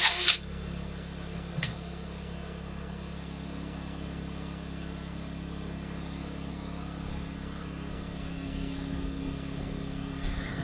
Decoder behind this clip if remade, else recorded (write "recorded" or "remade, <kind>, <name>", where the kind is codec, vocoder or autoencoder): remade, codec, SNAC